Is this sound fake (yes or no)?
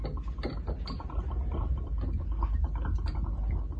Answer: no